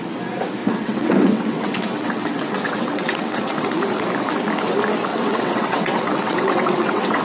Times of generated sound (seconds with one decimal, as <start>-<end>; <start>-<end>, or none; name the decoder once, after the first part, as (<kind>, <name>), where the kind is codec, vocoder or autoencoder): 0.6-3.8 (vocoder, WaveNeXt); 5.1-7.2